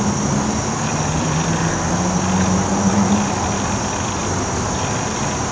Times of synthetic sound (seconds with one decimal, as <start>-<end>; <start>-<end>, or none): none